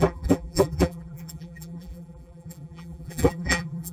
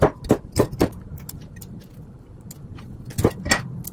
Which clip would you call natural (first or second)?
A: second